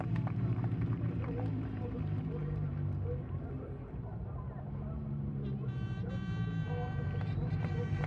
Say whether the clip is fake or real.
fake